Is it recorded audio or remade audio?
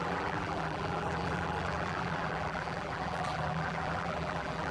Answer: remade